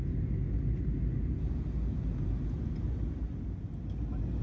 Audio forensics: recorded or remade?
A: recorded